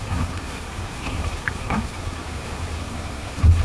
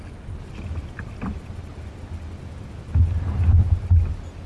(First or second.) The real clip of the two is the second